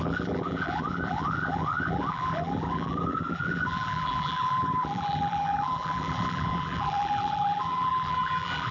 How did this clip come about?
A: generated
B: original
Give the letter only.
A